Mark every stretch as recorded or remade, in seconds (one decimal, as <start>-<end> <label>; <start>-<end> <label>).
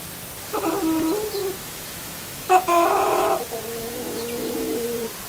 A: 0.0-1.4 recorded; 1.4-3.2 remade; 3.2-3.8 recorded; 3.8-4.7 remade; 4.7-5.3 recorded